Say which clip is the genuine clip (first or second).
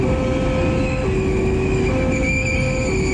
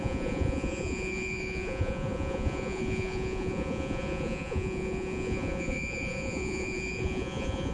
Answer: first